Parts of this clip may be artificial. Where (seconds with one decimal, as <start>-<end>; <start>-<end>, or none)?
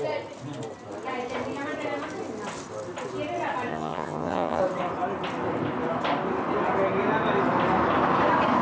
3.7-4.6